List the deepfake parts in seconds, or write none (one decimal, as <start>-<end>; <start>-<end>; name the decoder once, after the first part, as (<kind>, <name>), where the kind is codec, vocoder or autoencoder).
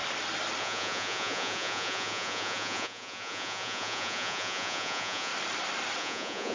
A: 0.6-5.3 (vocoder, Vocos); 6.0-6.5